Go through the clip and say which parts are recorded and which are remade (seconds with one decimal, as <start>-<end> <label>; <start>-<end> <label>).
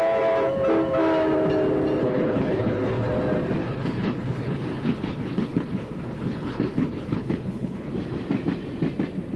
0.0-2.0 recorded; 2.0-3.1 remade; 3.1-3.6 recorded; 3.6-7.9 remade; 7.9-9.4 recorded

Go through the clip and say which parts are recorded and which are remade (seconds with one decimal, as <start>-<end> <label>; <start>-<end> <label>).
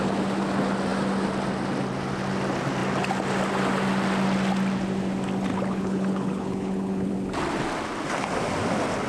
0.0-5.5 recorded; 5.5-7.1 remade; 7.1-9.1 recorded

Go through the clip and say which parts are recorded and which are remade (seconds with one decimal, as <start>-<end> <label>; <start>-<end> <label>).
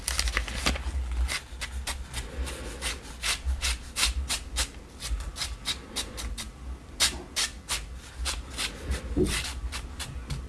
0.0-10.5 recorded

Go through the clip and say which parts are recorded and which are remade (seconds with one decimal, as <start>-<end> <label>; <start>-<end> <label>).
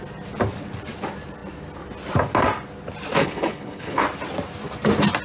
0.0-3.2 recorded; 3.2-4.0 remade; 4.0-5.2 recorded